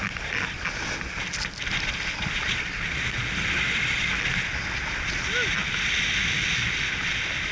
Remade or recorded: recorded